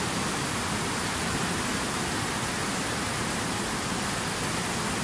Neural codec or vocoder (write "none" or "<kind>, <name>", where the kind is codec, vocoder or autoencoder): none